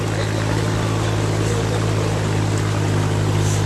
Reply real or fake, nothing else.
real